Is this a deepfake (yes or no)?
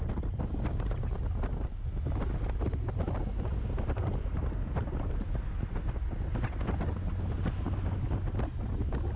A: no